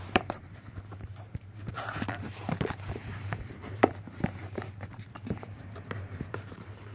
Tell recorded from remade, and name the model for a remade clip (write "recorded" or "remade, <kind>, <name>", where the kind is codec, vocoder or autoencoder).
remade, vocoder, BigVGAN v2